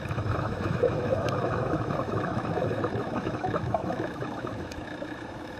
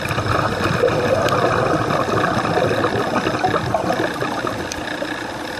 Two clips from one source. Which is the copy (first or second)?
first